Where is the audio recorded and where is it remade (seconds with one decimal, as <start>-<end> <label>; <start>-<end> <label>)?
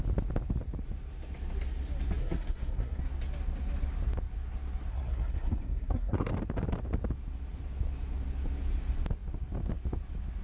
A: 0.0-2.2 recorded; 2.2-3.0 remade; 3.0-4.9 recorded; 4.9-6.3 remade; 6.3-10.4 recorded